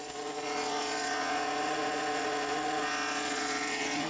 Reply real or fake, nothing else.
fake